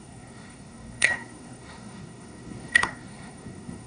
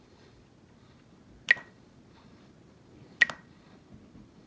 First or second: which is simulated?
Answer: first